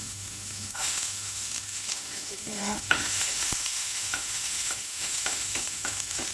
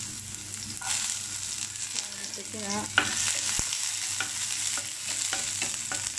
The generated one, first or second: first